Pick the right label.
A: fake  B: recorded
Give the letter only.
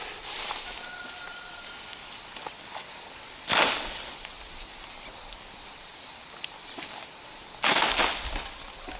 B